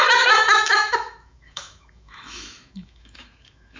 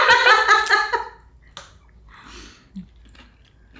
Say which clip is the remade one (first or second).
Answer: first